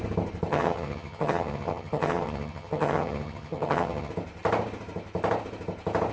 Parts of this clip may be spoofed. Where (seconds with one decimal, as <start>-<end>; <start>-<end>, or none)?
0.5-4.1